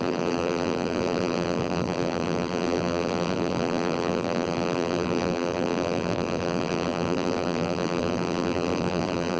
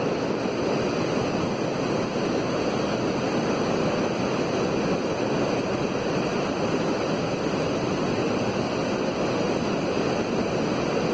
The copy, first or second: first